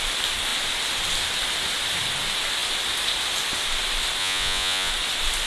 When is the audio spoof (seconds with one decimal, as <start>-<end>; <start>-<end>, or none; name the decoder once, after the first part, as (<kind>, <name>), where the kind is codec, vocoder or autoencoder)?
4.2-4.9 (vocoder, Vocos)